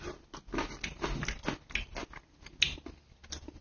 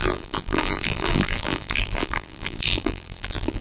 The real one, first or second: first